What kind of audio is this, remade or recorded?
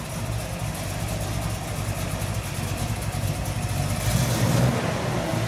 recorded